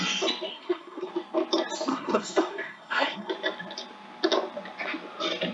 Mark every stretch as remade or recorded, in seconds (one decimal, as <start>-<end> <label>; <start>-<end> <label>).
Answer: 0.0-0.5 recorded; 0.5-1.1 remade; 1.1-1.9 recorded; 1.9-3.3 remade; 3.3-5.5 recorded